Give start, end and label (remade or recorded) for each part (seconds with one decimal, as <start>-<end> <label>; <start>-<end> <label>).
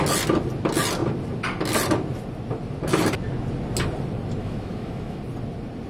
0.0-4.4 recorded; 4.4-5.2 remade; 5.2-5.9 recorded